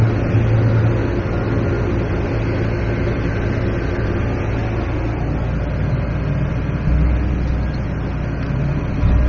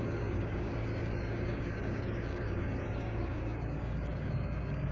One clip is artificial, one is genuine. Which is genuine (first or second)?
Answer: first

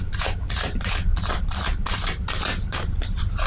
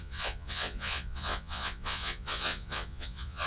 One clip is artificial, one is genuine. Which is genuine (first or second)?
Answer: first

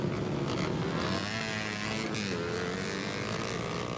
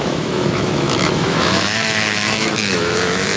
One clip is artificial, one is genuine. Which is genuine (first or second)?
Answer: first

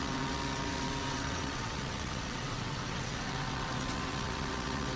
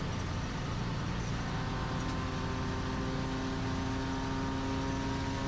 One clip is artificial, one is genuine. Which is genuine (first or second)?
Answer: second